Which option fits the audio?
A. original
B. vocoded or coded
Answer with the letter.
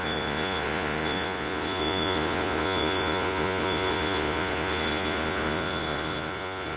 B